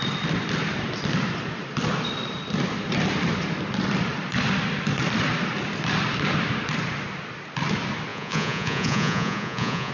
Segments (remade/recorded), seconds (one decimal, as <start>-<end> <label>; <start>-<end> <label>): 0.0-8.1 recorded; 8.1-9.9 remade